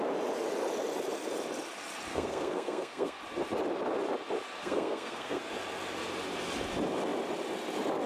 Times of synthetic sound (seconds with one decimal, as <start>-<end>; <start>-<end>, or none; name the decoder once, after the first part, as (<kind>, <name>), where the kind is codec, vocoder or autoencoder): 2.1-3.2 (codec, SNAC); 4.6-5.4